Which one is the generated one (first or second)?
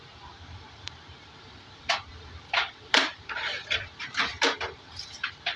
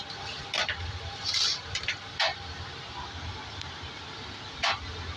first